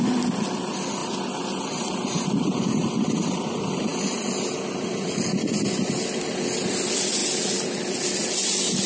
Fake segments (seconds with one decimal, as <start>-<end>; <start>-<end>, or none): none